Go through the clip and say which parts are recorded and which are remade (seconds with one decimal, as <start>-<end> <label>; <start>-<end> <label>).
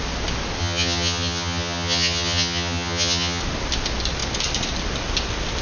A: 0.0-0.6 recorded; 0.6-3.4 remade; 3.4-5.6 recorded